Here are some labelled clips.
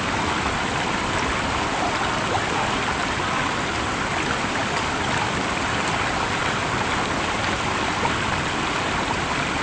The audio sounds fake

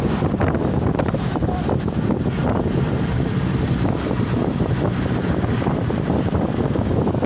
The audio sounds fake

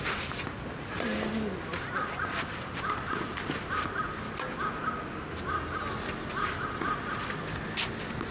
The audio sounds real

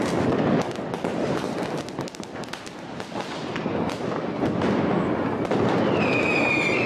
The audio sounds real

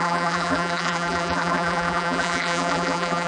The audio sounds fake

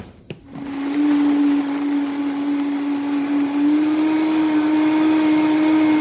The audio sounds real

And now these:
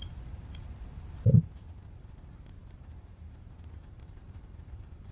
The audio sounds fake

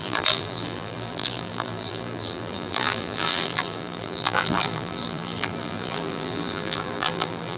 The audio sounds fake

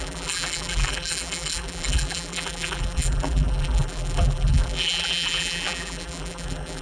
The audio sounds fake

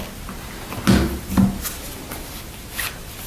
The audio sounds real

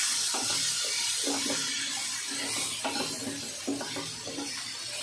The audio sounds real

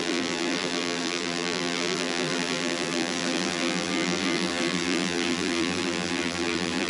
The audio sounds fake